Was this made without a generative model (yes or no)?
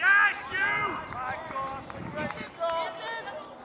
yes